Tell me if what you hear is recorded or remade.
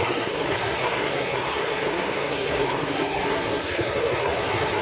remade